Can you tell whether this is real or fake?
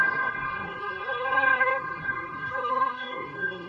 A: fake